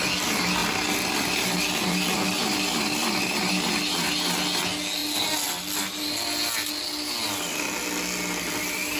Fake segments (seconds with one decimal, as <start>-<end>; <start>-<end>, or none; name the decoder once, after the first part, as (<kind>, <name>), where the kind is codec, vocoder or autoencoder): none